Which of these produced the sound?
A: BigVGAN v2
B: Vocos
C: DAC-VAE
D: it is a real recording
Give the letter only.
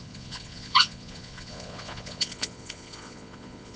B